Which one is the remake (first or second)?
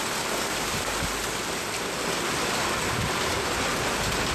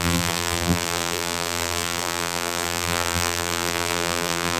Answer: second